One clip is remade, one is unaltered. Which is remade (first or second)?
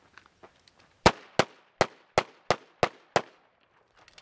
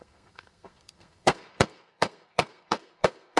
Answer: second